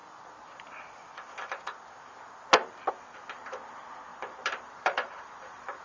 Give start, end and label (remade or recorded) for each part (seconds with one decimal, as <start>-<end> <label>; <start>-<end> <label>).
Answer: 0.0-4.1 recorded; 4.1-5.8 remade